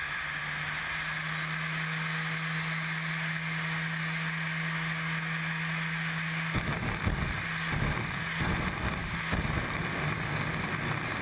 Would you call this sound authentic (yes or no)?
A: yes